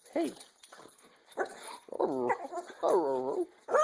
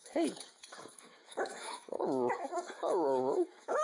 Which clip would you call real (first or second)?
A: first